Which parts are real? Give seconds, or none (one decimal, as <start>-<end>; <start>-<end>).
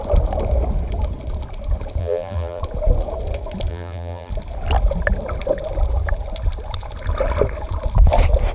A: 0.0-2.0; 2.6-3.7; 4.3-8.5